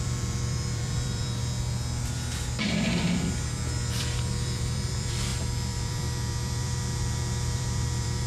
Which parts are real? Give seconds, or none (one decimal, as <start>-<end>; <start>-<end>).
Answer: 1.4-3.9